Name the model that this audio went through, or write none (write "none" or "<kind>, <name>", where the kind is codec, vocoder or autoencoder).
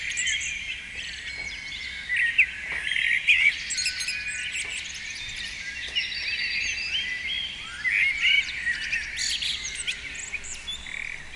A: none